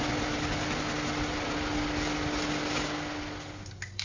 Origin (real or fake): real